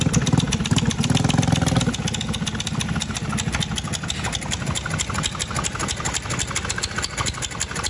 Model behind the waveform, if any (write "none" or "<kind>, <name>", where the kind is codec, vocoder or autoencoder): none